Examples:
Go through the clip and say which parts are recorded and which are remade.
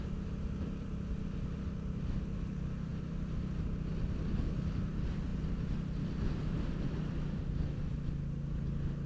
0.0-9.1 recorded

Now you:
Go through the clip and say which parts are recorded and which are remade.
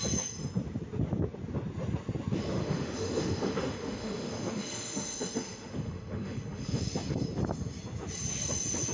0.0-2.6 recorded; 2.6-6.8 remade; 6.8-8.9 recorded